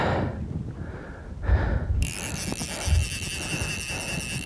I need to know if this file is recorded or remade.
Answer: recorded